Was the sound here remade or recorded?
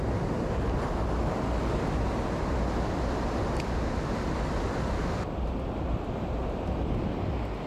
recorded